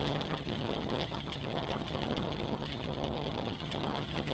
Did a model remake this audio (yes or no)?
yes